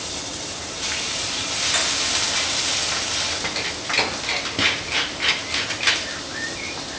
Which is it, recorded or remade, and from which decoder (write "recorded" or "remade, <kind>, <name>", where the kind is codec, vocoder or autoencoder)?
recorded